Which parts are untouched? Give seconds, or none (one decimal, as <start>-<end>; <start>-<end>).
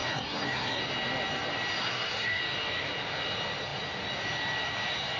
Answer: 0.8-1.8; 2.4-5.2